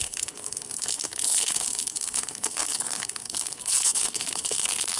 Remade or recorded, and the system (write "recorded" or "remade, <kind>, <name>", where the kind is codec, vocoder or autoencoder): remade, codec, SNAC